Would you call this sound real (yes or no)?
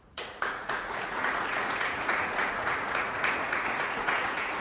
no